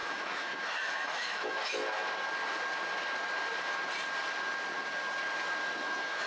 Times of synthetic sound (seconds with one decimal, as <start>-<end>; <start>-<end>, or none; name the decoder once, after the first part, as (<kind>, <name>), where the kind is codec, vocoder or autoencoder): 0.0-2.0 (autoencoder, DAC-VAE); 5.8-6.3